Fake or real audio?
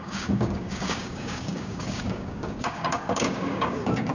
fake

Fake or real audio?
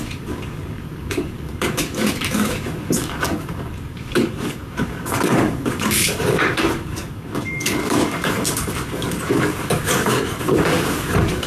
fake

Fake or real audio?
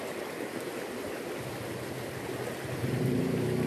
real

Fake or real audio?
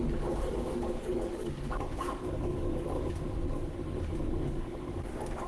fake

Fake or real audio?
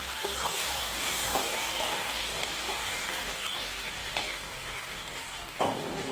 fake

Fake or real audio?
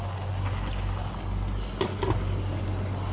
real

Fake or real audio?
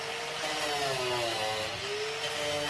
real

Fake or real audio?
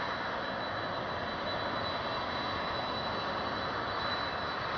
real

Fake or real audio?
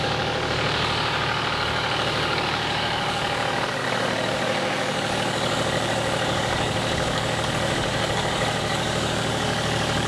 fake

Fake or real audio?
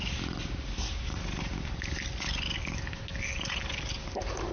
real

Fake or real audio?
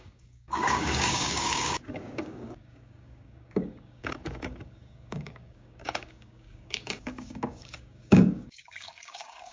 fake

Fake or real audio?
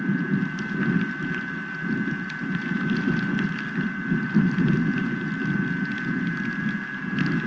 real